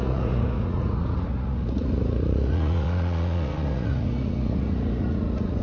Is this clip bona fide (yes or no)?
no